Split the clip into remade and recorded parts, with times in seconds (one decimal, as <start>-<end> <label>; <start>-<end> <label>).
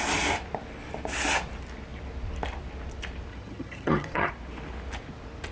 0.0-3.3 recorded; 3.3-4.3 remade; 4.3-5.5 recorded